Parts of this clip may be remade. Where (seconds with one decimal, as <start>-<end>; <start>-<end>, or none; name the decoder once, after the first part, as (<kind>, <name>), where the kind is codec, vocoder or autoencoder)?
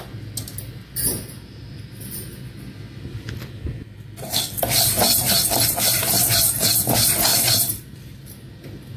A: 0.5-1.8 (vocoder, BigVGAN v2); 7.3-8.3